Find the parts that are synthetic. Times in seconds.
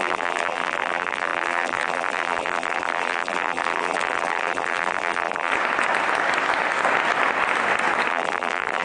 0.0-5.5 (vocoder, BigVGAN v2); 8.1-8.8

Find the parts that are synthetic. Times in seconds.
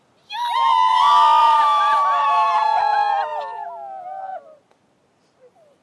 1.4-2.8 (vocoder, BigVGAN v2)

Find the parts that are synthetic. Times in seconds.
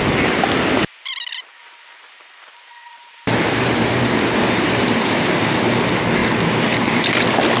1.6-5.6 (vocoder, BigVGAN v2)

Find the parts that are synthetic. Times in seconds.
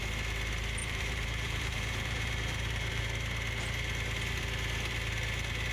0.8-3.0 (vocoder, BigVGAN v2)